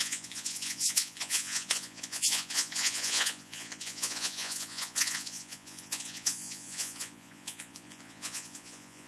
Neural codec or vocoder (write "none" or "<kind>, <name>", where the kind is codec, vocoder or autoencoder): vocoder, Vocos